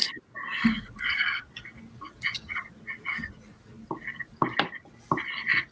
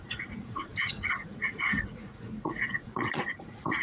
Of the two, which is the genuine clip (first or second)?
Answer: first